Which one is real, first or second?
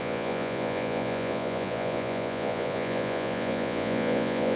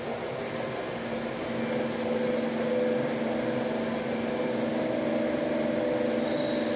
second